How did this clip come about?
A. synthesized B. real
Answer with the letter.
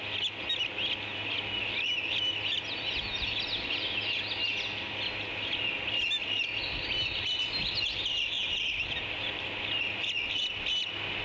B